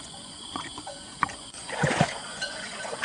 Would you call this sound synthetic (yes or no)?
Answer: yes